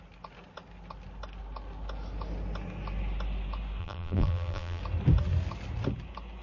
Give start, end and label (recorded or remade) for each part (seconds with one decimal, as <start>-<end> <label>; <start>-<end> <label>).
0.0-3.8 recorded; 3.8-4.8 remade; 4.8-6.4 recorded